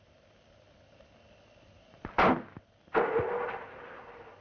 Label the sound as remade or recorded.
recorded